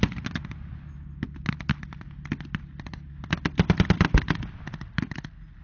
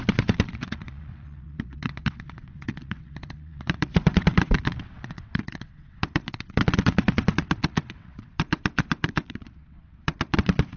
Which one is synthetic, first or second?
second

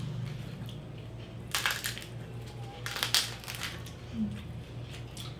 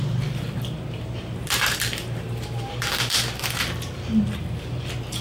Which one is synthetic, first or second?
second